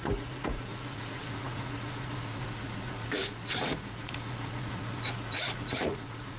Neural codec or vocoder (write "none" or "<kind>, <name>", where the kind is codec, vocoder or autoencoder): vocoder, Vocos